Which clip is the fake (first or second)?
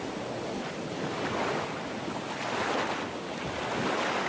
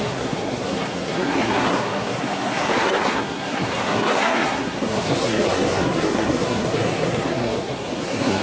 second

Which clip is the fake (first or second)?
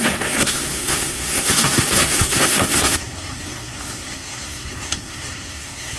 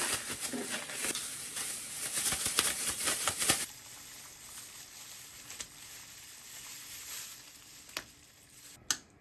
first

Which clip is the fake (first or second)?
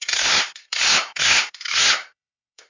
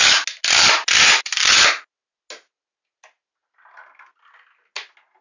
first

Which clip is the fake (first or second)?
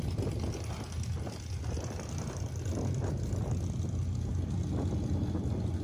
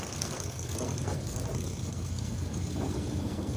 second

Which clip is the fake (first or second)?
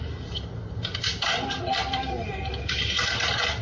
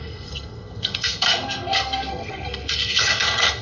second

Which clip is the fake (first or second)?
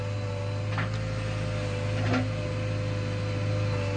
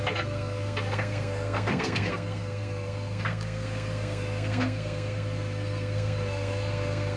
second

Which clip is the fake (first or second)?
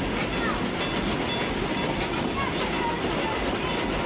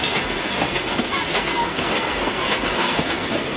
second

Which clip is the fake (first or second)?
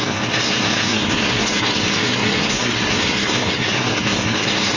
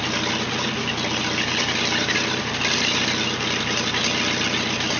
first